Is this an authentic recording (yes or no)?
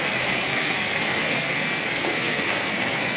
no